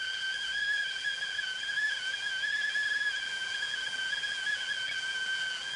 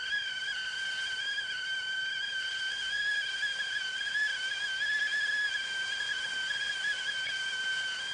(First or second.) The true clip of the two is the second